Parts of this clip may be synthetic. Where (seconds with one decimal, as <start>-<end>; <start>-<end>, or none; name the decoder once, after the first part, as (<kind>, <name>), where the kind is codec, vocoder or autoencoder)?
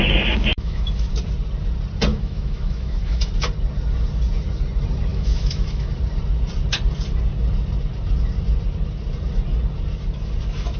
0.5-1.1 (autoencoder, DAC-VAE); 2.1-3.3; 5.1-5.9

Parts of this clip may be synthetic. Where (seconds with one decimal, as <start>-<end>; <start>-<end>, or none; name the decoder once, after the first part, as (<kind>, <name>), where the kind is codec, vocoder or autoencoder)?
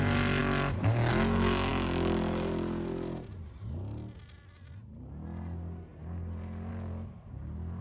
none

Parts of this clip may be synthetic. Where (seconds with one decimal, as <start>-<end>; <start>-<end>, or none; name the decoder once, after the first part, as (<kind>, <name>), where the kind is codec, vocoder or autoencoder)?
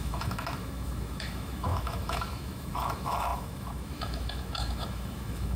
0.0-5.6 (autoencoder, DAC-VAE)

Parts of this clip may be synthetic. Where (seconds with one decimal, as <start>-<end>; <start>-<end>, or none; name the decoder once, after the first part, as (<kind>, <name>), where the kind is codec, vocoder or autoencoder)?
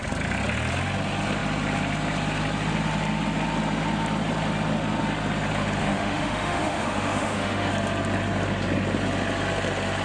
5.8-7.7 (autoencoder, DAC-VAE)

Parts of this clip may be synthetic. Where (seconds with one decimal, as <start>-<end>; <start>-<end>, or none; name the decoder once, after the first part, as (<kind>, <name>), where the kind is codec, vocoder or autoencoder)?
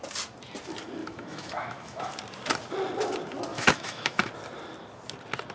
1.0-2.1 (autoencoder, DAC-VAE); 3.5-4.3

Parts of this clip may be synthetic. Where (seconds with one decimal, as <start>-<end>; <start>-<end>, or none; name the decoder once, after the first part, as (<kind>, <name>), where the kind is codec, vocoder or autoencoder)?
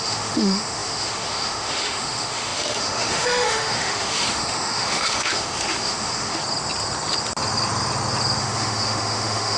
0.0-6.4 (autoencoder, DAC-VAE); 8.4-9.6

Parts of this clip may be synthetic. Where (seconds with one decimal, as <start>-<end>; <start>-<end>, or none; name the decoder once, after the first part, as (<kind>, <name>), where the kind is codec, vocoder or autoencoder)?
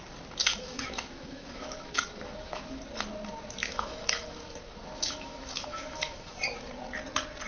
0.4-2.8 (autoencoder, DAC-VAE); 3.6-6.3